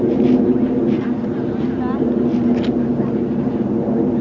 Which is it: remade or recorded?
recorded